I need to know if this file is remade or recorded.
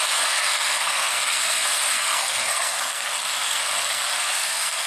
remade